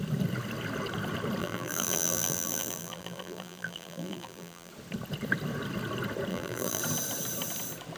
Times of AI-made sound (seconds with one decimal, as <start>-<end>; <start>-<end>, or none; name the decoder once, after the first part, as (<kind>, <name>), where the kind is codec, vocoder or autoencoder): 1.4-4.7 (vocoder, BigVGAN v2); 6.3-6.8